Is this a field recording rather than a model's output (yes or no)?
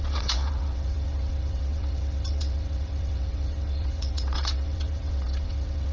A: no